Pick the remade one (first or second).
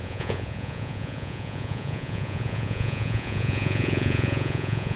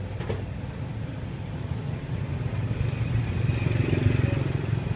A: first